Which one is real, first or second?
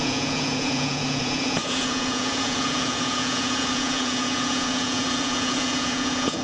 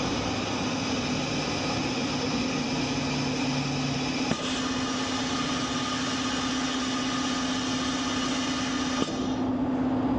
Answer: second